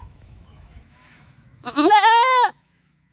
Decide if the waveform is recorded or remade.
remade